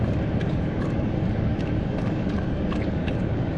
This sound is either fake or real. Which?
fake